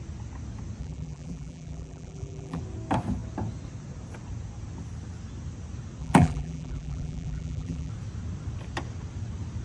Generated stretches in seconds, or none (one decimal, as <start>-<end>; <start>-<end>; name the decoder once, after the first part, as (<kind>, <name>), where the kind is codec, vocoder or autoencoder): 0.8-2.6 (vocoder, BigVGAN v2); 6.0-7.9